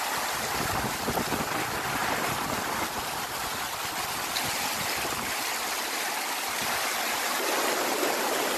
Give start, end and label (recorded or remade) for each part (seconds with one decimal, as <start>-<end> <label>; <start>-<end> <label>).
0.0-8.6 recorded